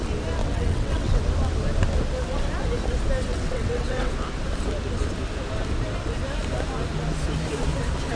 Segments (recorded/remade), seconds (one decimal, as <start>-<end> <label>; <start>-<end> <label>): 0.0-0.4 recorded; 0.4-1.2 remade; 1.2-3.3 recorded; 3.3-4.1 remade; 4.1-8.2 recorded